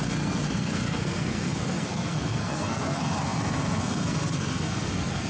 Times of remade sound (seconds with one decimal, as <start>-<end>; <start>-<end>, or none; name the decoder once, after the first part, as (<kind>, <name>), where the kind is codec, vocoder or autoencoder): 0.0-5.3 (codec, SNAC)